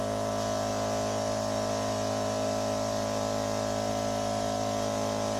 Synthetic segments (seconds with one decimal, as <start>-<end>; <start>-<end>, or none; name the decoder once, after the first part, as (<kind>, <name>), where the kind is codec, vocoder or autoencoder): none